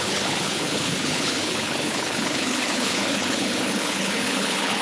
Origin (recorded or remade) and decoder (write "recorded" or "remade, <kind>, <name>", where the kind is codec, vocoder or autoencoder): remade, codec, HILCodec